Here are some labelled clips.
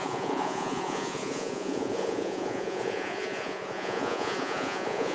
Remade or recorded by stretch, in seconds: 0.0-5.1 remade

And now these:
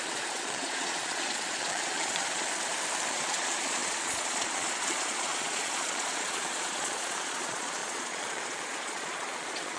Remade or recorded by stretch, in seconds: 0.0-2.5 remade; 2.5-3.1 recorded; 3.1-9.8 remade

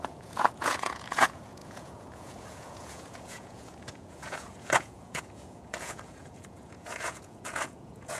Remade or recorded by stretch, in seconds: 0.0-8.2 remade

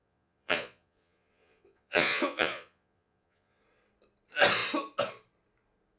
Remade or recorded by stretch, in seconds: 0.0-3.6 remade; 3.6-6.0 recorded

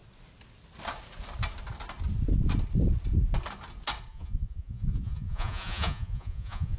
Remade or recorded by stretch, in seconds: 0.0-4.1 recorded; 4.1-6.8 remade

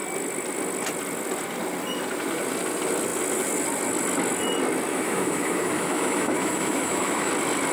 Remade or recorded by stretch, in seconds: 0.0-4.9 recorded; 4.9-7.3 remade; 7.3-7.7 recorded

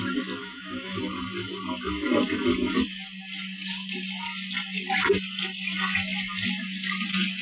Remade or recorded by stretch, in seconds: 0.0-0.4 recorded; 0.4-1.0 remade; 1.0-7.4 recorded